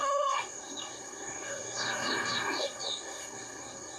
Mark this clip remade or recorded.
remade